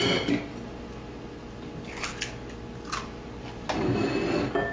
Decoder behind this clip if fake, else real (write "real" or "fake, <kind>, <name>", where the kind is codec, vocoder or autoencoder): real